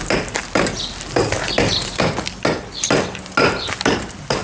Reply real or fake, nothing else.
real